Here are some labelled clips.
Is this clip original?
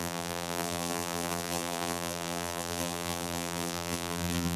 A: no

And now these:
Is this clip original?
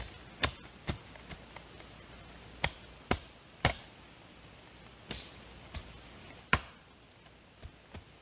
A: yes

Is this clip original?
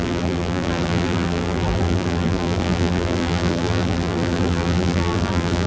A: no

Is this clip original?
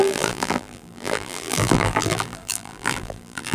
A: no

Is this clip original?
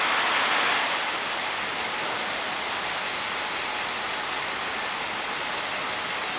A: yes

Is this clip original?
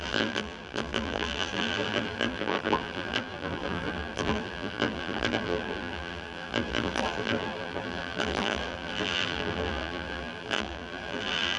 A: no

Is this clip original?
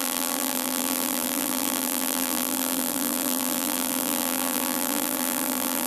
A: no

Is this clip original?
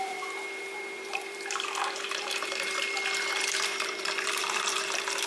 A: no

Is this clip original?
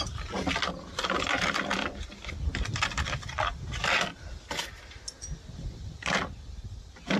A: yes